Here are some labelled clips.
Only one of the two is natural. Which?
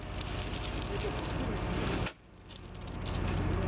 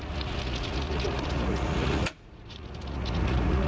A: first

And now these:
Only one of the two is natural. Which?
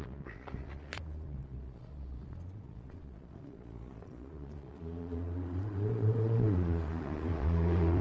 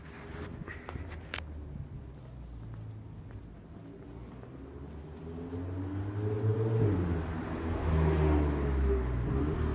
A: second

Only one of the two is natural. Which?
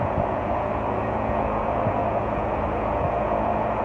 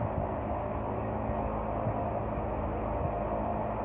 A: second